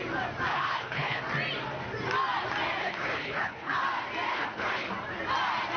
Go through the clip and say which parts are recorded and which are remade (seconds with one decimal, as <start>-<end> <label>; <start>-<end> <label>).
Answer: 0.0-0.5 recorded; 0.5-1.2 remade; 1.2-2.8 recorded; 2.8-3.8 remade; 3.8-4.3 recorded; 4.3-4.9 remade; 4.9-5.8 recorded